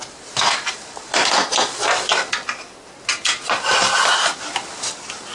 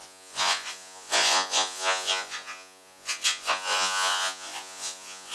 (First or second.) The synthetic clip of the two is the second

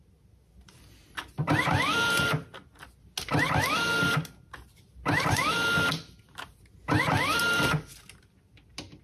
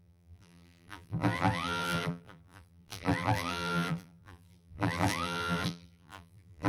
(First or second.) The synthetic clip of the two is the second